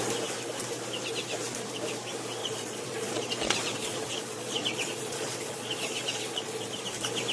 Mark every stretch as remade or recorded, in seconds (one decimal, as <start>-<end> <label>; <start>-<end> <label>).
0.0-2.4 recorded; 2.4-6.8 remade; 6.8-7.3 recorded

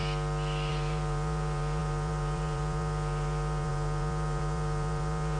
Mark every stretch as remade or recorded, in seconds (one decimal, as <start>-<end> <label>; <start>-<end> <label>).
0.0-0.7 recorded; 0.7-5.4 remade